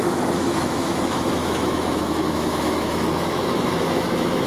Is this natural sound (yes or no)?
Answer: no